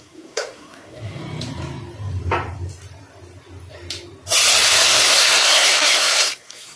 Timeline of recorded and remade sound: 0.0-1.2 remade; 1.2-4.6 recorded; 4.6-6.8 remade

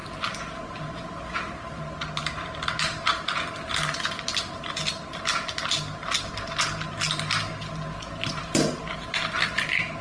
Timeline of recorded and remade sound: 0.0-10.0 recorded

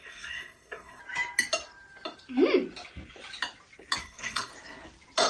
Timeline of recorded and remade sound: 0.0-1.0 remade; 1.0-4.0 recorded; 4.0-4.5 remade; 4.5-5.3 recorded

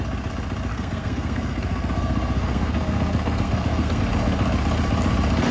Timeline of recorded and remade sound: 0.0-0.7 recorded; 0.7-4.0 remade; 4.0-5.5 recorded